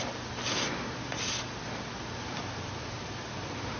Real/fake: fake